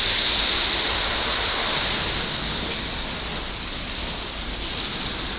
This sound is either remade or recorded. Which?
recorded